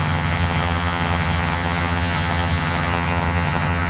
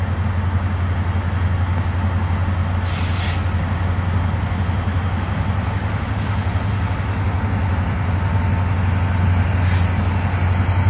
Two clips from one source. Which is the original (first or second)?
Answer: second